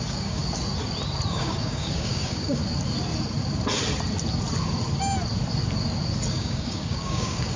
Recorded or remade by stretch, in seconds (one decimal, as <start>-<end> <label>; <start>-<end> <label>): 0.0-0.4 remade; 0.4-1.3 recorded; 1.3-2.6 remade; 2.6-6.3 recorded; 6.3-7.6 remade